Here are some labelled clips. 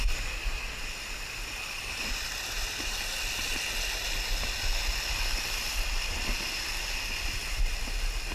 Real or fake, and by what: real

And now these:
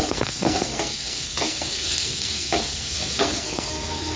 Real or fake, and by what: fake, codec, SNAC